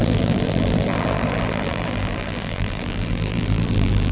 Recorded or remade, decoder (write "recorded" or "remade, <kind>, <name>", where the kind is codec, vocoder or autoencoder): remade, vocoder, BigVGAN v2